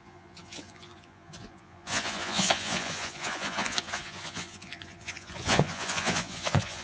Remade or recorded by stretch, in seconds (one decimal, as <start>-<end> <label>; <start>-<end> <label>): 0.0-6.8 remade